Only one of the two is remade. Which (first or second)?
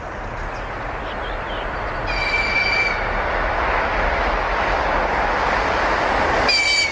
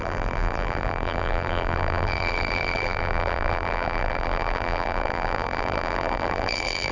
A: second